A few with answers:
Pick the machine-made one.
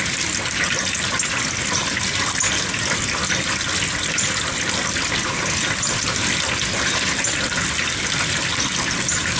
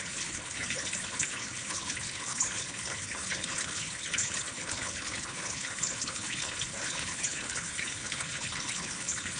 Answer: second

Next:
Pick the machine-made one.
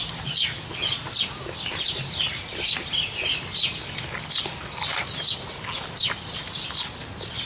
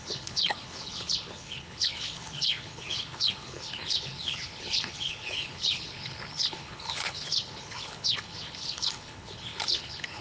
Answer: second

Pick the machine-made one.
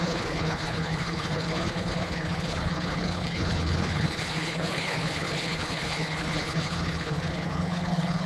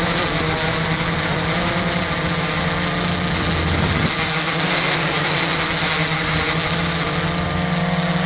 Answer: first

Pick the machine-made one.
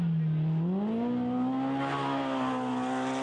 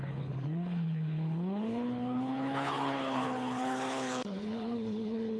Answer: second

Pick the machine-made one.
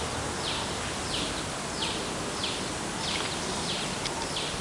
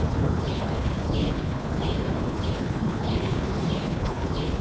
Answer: second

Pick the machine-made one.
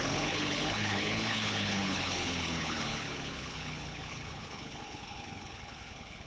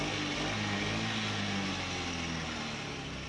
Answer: first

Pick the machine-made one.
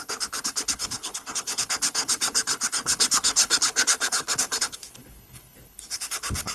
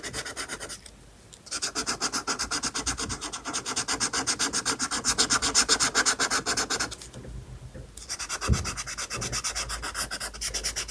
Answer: first